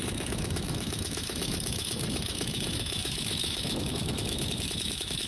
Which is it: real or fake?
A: fake